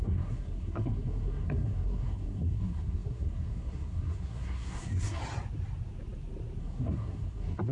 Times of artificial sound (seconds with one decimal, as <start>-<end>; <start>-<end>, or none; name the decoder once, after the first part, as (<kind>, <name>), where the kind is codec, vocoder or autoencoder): 0.0-5.2 (codec, SNAC); 6.6-7.7